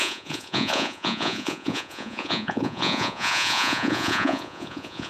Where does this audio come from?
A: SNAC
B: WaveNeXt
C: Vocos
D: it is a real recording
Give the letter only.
C